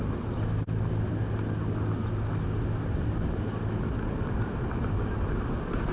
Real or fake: real